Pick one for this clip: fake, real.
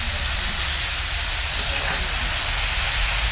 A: real